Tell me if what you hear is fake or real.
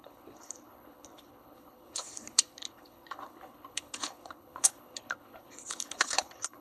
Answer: fake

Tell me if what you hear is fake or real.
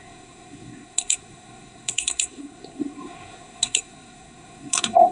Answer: fake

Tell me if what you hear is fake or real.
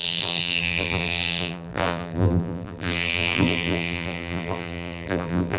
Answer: fake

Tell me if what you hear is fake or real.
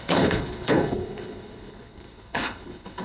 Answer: fake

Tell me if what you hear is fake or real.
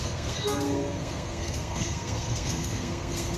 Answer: fake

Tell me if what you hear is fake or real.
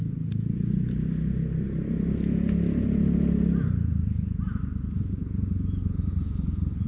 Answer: real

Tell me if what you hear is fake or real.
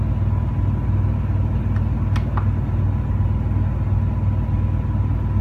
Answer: real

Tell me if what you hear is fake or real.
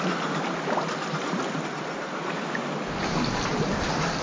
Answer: real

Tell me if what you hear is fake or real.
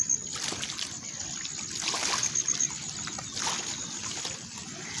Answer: real